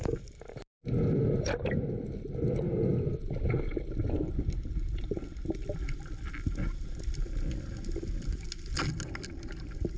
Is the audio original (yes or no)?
yes